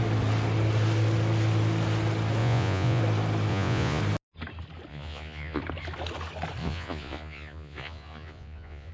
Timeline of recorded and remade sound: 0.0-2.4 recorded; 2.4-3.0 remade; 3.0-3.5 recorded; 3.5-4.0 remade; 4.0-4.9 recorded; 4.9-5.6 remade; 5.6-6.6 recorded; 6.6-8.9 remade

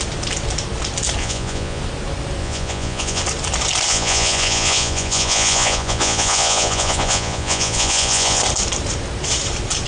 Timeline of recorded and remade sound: 0.0-1.2 recorded; 1.2-1.8 remade; 1.8-2.4 recorded; 2.4-3.2 remade; 3.2-3.9 recorded; 3.9-8.4 remade; 8.4-9.9 recorded

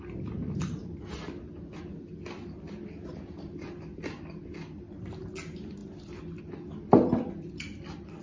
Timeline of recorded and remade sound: 0.0-8.2 recorded